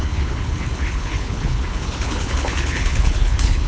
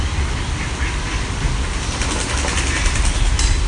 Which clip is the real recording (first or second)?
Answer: second